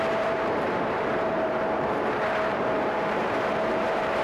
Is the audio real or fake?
fake